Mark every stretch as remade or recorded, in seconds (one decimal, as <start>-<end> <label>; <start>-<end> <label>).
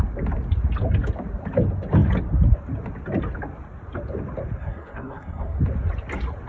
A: 0.0-4.6 recorded; 4.6-5.6 remade; 5.6-6.5 recorded